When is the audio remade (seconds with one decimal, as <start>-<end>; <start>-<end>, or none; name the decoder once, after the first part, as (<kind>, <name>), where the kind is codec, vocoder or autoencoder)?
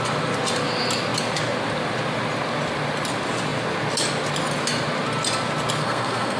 5.8-6.4 (codec, SNAC)